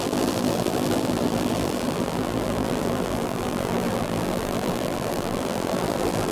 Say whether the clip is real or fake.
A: fake